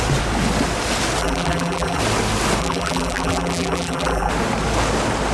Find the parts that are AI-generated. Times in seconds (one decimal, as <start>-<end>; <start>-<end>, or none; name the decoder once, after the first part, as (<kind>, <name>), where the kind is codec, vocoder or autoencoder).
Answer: 1.2-2.0 (vocoder, BigVGAN v2); 2.6-4.3